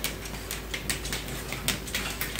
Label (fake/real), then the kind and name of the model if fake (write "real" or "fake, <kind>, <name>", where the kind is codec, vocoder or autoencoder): real